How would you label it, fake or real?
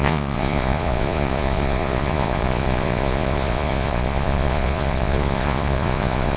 fake